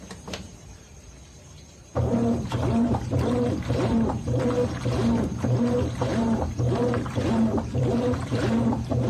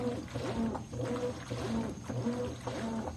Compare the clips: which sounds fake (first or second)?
first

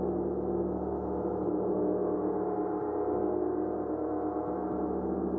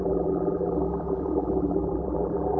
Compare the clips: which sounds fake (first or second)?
second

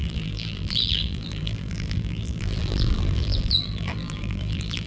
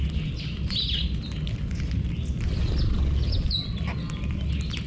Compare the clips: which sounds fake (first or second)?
first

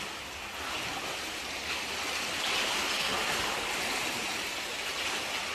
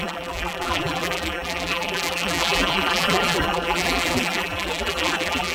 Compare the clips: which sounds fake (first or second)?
second